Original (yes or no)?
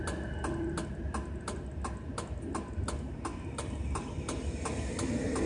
yes